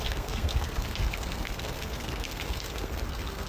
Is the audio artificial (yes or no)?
yes